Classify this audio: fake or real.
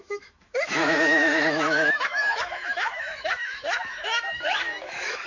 fake